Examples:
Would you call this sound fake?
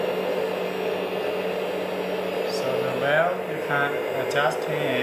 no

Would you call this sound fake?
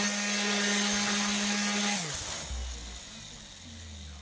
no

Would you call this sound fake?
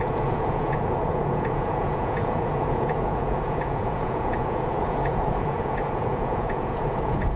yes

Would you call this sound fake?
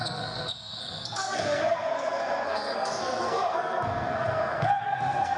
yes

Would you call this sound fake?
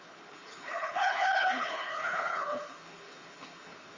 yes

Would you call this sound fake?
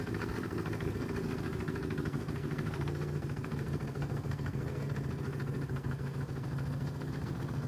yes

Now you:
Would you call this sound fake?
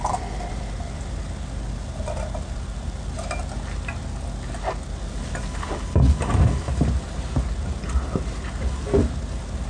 no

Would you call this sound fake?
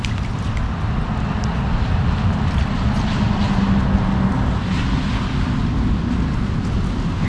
no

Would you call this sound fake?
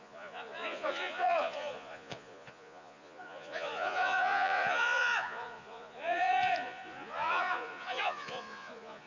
yes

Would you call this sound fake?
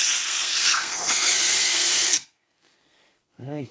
yes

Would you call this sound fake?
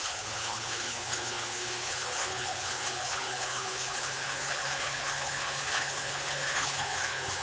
yes